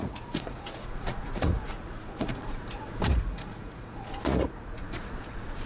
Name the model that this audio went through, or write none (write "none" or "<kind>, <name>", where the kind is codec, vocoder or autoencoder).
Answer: vocoder, Vocos